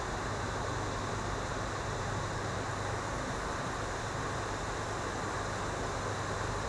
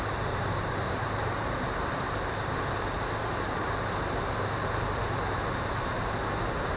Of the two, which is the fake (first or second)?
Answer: second